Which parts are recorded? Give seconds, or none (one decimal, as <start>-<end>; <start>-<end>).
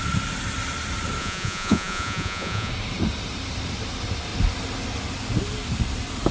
0.0-1.2; 2.7-6.3